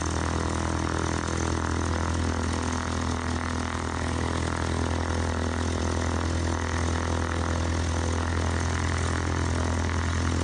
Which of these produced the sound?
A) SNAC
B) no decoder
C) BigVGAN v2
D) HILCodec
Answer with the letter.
B